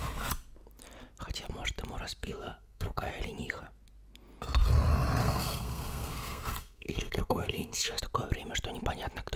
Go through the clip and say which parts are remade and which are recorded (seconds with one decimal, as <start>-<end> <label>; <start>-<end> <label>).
0.0-2.2 recorded; 2.2-3.1 remade; 3.1-5.2 recorded; 5.2-8.0 remade; 8.0-9.4 recorded